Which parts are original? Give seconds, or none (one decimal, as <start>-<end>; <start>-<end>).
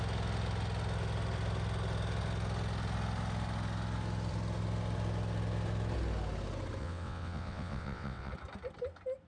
0.0-6.8; 8.3-9.3